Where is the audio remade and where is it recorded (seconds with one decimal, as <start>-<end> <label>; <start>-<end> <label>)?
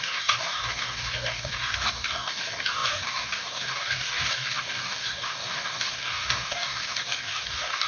0.0-7.9 remade